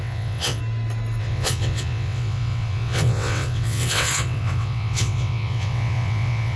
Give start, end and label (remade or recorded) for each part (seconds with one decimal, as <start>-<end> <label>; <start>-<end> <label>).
0.0-0.6 remade; 0.6-1.2 recorded; 1.2-6.6 remade